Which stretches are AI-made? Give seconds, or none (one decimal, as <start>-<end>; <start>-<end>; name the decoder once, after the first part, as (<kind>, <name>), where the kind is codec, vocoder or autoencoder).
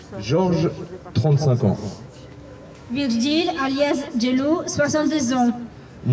1.8-5.5 (autoencoder, DAC-VAE)